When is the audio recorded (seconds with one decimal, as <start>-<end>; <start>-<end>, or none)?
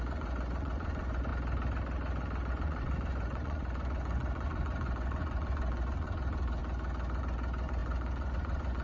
1.3-2.5; 6.6-7.2